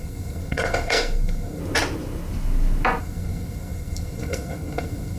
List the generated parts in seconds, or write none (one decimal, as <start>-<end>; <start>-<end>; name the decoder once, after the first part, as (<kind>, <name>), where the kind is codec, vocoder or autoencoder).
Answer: 0.0-1.6 (codec, SNAC); 3.0-5.2